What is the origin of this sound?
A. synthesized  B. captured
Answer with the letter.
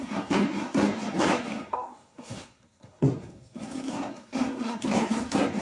A